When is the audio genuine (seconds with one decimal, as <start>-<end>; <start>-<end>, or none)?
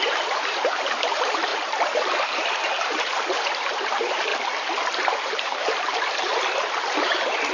4.3-5.1; 6.3-7.5